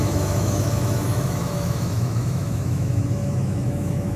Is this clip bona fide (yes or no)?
no